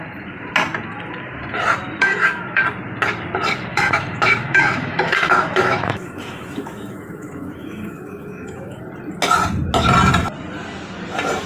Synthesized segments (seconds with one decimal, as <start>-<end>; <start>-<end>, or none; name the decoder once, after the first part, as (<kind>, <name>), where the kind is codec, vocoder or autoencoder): 2.0-2.6 (autoencoder, DAC-VAE); 3.7-8.8